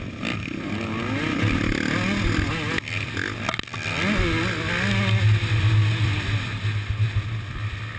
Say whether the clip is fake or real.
real